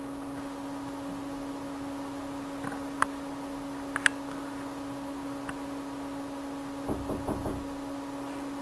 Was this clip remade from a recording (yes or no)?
no